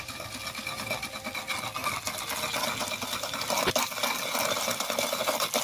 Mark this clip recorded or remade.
recorded